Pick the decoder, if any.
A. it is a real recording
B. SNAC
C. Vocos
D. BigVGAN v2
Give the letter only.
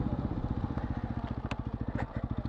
A